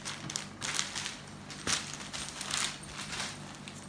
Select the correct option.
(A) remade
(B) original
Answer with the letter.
B